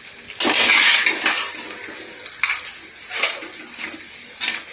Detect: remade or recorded recorded